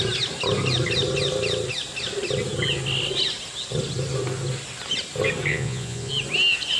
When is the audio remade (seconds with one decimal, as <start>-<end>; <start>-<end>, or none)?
5.5-6.1